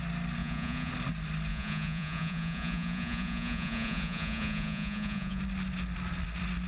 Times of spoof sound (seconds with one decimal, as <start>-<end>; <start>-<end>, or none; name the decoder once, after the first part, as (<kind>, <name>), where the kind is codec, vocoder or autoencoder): 0.4-0.9 (vocoder, Vocos); 1.5-5.4